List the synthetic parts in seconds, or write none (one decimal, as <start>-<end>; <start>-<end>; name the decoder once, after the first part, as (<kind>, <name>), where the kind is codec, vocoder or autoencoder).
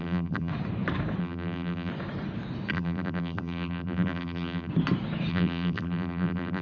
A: 0.0-0.5 (vocoder, BigVGAN v2); 1.2-1.9; 2.7-4.7; 5.3-6.6